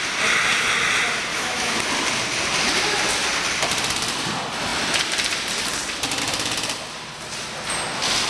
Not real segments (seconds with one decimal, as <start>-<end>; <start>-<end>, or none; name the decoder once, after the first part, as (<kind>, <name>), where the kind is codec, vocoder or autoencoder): 1.3-1.8 (autoencoder, DAC-VAE)